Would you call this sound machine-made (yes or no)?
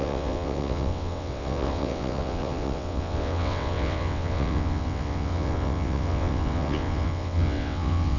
yes